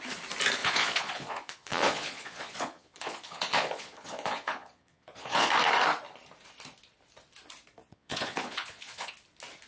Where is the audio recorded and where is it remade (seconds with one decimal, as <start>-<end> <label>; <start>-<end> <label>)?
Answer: 0.0-0.6 recorded; 0.6-5.5 remade; 5.5-7.8 recorded; 7.8-9.1 remade; 9.1-9.7 recorded